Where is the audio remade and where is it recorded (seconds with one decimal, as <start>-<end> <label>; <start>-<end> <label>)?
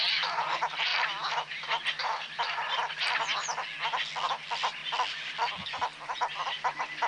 0.0-7.1 recorded